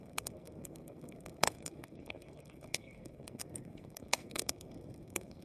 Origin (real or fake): fake